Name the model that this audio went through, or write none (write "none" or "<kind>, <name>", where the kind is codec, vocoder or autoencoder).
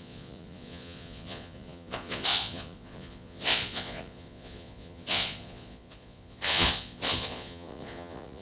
vocoder, Vocos